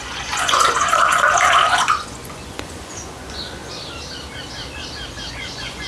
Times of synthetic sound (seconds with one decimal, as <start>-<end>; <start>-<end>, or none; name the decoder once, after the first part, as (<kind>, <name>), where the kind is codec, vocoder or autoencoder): 0.0-3.6 (vocoder, Vocos); 5.3-5.9